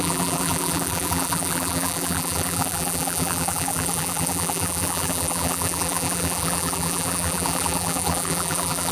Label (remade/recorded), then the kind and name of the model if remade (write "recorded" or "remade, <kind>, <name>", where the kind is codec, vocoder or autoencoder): remade, vocoder, BigVGAN v2